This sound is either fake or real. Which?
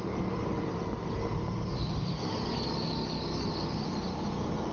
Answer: real